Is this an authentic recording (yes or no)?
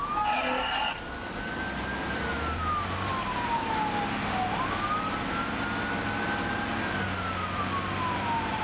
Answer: yes